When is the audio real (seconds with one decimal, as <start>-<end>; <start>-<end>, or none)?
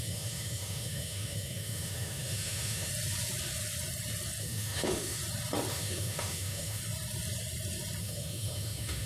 2.9-4.4; 5.2-5.7; 6.8-8.0